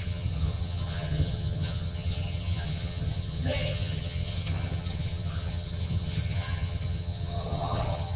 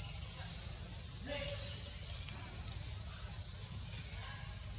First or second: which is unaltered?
second